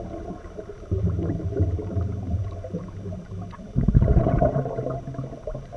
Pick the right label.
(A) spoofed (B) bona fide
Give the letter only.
A